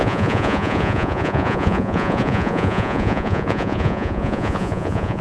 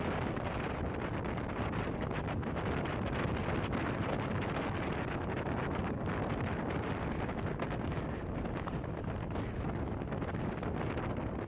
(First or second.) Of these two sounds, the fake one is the first